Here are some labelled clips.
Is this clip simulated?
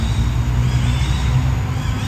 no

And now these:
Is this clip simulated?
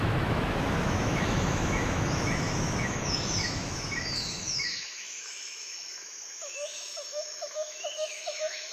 yes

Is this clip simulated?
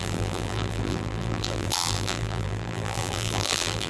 yes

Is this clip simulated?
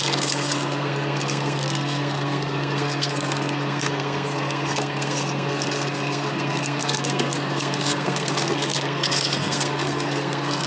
yes